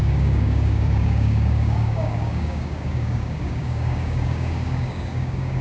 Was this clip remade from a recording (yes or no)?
yes